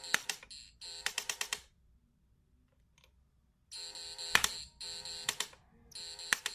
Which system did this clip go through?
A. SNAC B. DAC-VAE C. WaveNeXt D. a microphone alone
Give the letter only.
D